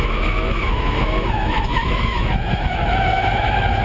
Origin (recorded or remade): remade